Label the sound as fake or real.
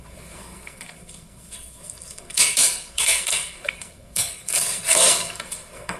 fake